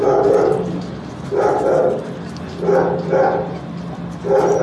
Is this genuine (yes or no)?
yes